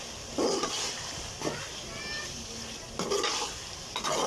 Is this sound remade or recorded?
recorded